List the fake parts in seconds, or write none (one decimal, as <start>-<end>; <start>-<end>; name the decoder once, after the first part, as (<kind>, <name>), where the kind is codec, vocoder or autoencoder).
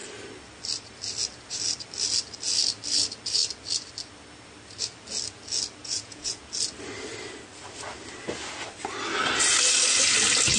5.8-6.4 (vocoder, Vocos)